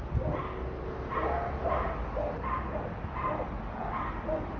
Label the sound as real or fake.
real